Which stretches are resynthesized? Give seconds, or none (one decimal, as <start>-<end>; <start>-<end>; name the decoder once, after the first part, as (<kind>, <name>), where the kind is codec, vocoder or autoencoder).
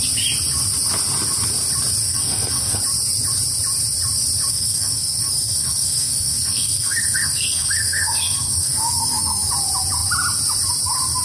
2.0-2.8 (codec, SNAC); 4.5-9.5